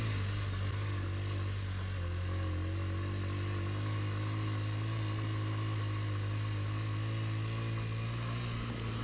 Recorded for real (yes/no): yes